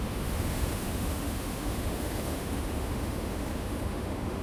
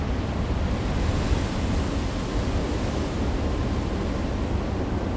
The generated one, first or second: first